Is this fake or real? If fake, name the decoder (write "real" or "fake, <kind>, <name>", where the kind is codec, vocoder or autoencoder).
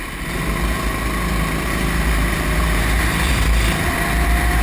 real